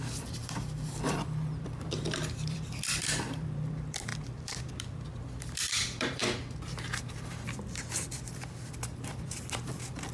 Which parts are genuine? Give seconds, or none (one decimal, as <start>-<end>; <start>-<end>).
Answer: 6.2-7.0